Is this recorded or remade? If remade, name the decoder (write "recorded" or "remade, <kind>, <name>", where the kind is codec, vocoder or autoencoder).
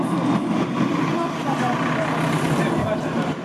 recorded